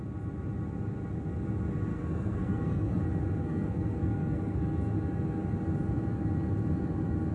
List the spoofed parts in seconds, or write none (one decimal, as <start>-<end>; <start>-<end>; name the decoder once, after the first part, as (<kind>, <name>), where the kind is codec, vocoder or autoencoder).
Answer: 1.9-3.0 (codec, SNAC); 3.4-4.6